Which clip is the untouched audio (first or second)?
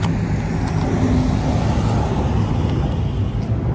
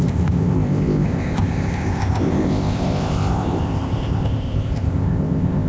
first